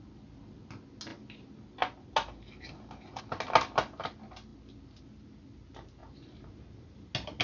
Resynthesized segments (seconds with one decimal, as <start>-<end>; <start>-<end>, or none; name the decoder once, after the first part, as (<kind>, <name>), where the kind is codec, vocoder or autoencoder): none